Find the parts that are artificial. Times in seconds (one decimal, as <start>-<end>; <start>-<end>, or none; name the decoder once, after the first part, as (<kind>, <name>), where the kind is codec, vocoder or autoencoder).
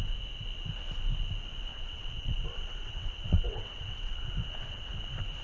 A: 1.7-4.9 (vocoder, WaveNeXt)